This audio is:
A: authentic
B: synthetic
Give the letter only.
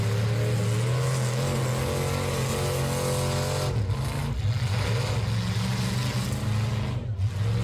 A